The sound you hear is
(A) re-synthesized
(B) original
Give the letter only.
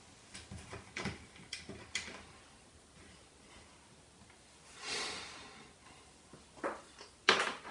B